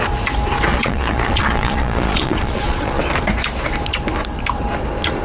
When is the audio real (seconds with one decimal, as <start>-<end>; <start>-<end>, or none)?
0.0-0.7; 3.0-5.2